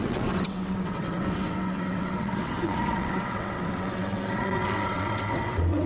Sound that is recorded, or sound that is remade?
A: remade